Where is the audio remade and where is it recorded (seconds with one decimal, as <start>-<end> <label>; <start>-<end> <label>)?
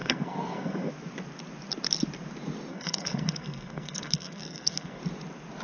0.0-0.9 remade; 0.9-2.7 recorded; 2.7-5.0 remade; 5.0-5.6 recorded